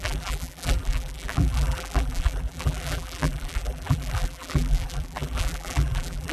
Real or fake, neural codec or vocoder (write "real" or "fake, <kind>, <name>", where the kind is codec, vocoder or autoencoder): fake, vocoder, BigVGAN v2